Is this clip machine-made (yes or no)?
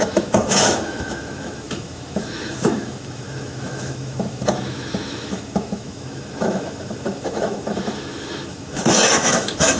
yes